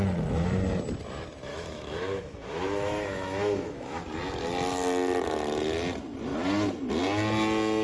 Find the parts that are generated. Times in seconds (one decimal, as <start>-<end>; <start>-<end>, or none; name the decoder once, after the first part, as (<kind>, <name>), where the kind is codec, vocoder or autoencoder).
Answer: 1.5-4.0 (autoencoder, DAC-VAE)